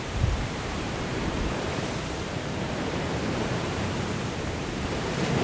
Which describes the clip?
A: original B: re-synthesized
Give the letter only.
B